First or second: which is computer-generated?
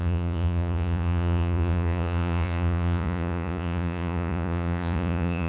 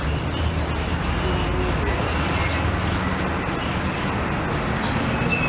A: first